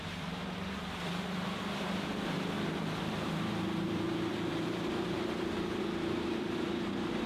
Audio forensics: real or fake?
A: fake